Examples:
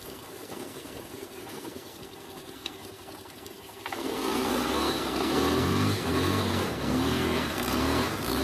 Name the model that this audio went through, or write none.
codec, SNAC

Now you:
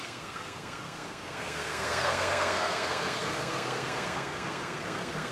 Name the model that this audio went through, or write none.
codec, SNAC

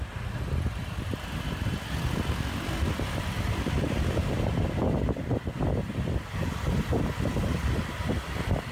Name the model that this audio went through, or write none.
none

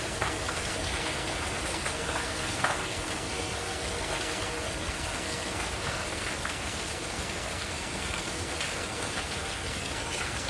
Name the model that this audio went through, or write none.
codec, SNAC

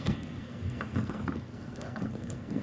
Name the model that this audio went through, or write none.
codec, SNAC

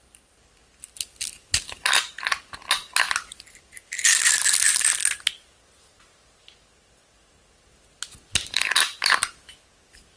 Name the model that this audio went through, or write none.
none